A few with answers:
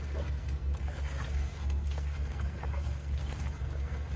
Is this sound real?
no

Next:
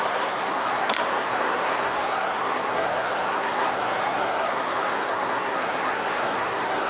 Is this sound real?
no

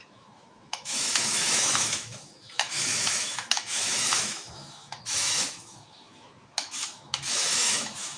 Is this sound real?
no